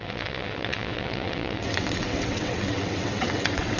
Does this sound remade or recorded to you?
remade